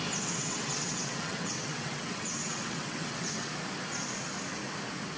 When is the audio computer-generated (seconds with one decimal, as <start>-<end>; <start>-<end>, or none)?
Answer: 0.4-3.5